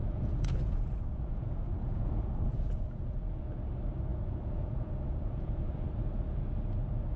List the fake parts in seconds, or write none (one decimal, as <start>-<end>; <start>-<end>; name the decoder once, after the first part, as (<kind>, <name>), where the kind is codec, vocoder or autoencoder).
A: 0.0-3.4 (vocoder, Vocos); 4.1-5.7